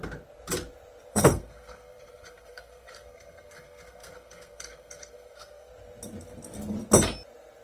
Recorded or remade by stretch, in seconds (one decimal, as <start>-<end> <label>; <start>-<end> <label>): 0.0-1.1 recorded; 1.1-5.7 remade; 5.7-7.6 recorded